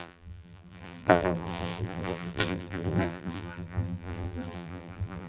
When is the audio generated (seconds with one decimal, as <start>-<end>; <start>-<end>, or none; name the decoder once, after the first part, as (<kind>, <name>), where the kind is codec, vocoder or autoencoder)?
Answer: 0.0-5.3 (vocoder, BigVGAN v2)